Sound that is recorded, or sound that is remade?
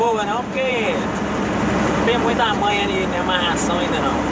remade